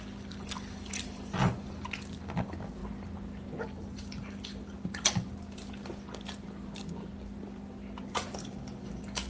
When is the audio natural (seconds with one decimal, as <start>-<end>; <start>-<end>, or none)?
2.8-3.6; 5.1-8.0

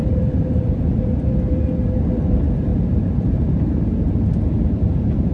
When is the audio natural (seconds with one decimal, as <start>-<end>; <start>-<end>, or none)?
none

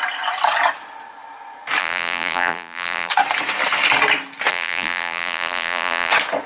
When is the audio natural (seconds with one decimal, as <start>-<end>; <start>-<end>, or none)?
0.0-1.8; 3.1-4.5; 6.1-6.5